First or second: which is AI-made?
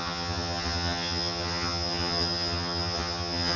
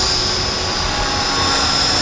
first